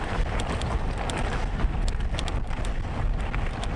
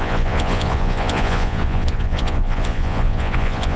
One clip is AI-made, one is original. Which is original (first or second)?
first